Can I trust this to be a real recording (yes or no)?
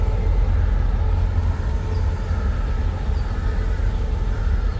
yes